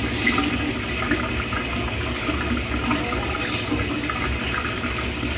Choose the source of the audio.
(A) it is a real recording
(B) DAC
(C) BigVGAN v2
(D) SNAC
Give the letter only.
A